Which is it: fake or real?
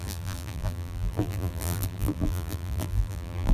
fake